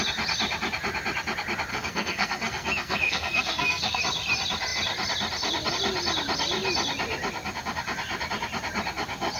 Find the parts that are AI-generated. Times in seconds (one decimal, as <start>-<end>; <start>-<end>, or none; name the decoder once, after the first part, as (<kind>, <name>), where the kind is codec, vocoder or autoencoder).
1.7-4.0 (codec, SNAC)